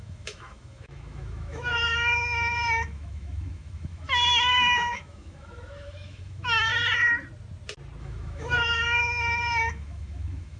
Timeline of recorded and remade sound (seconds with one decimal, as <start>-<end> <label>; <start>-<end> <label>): 0.0-6.7 remade; 6.7-8.0 recorded; 8.0-10.6 remade